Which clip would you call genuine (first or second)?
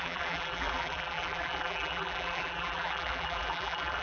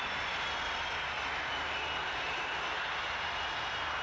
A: second